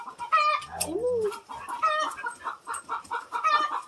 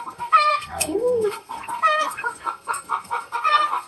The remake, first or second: second